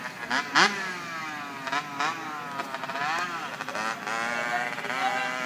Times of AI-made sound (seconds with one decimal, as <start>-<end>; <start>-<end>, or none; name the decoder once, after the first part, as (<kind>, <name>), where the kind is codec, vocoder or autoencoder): none